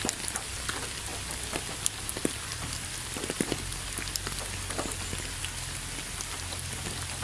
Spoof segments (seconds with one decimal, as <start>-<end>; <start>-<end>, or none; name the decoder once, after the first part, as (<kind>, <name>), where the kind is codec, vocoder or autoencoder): none